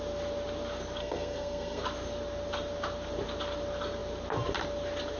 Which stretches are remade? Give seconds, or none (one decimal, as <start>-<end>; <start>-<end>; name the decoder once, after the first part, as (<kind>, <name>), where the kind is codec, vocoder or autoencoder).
1.0-1.8 (codec, SNAC)